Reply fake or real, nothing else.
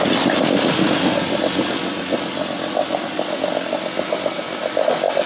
real